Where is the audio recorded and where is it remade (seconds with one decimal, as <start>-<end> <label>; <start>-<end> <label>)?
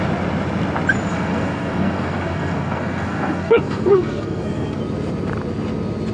0.0-1.1 recorded; 1.1-4.8 remade; 4.8-6.1 recorded